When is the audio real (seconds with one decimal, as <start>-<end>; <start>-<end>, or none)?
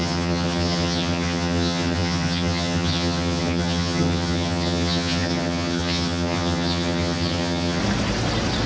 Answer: 7.8-8.7